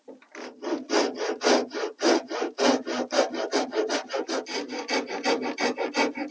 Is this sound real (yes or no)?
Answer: yes